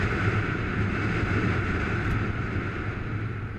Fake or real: real